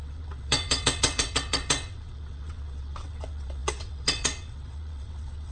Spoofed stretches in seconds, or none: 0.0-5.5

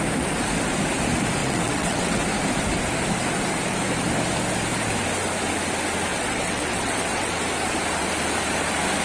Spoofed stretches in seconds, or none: 1.4-2.2; 6.1-7.4

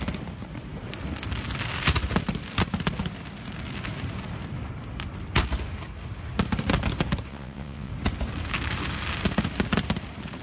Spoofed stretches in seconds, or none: 7.3-7.9

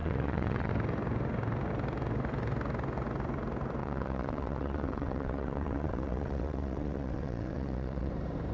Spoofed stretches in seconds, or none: 0.0-0.7; 3.8-8.1

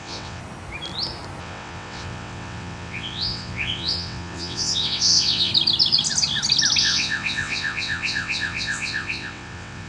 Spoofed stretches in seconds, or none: 0.0-0.4; 1.4-5.5; 6.8-9.9

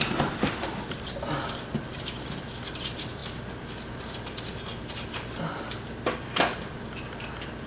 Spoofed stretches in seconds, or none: none

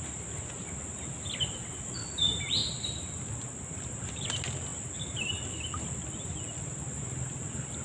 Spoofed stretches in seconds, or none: none

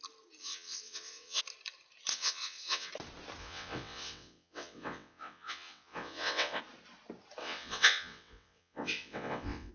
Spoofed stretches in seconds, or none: 0.4-1.4; 2.1-2.9; 3.4-6.6; 7.4-9.7